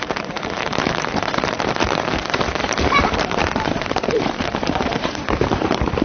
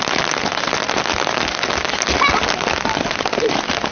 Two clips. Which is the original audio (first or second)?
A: second